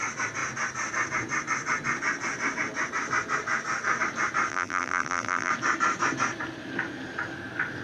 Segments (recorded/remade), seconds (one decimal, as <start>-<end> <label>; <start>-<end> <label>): 0.0-4.5 recorded; 4.5-5.5 remade; 5.5-7.8 recorded